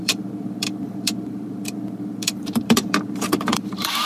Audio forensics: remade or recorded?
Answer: remade